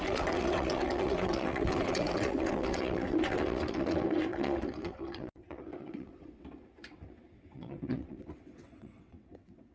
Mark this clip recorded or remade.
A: remade